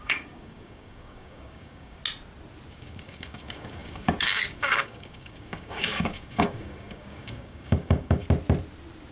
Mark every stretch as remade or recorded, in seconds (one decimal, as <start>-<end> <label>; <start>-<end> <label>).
0.0-2.0 remade; 2.0-2.7 recorded; 2.7-8.2 remade; 8.2-9.1 recorded